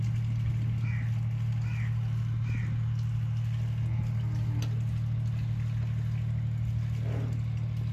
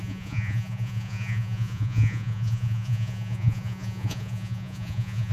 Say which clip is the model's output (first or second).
second